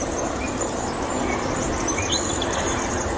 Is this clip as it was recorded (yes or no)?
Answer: no